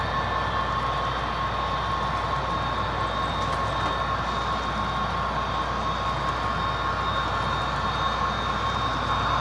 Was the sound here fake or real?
real